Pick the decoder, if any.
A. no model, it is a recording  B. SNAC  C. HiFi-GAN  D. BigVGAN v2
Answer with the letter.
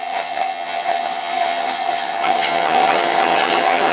C